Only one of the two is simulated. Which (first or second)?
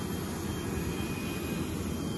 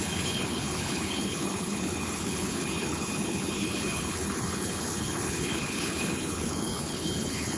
second